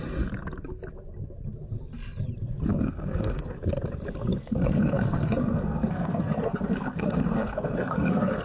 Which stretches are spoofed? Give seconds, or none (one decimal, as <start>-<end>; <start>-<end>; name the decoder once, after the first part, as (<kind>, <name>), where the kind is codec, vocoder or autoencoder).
2.7-3.6 (codec, SNAC); 4.4-8.4